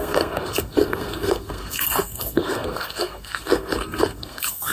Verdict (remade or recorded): remade